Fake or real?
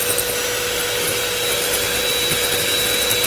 real